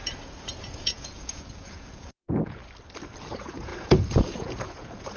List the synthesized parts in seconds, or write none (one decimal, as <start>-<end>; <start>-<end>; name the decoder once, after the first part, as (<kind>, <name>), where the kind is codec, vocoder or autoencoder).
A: 0.6-2.6 (vocoder, Vocos); 3.2-5.2